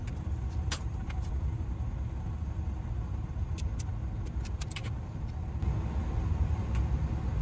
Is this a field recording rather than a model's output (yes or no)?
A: yes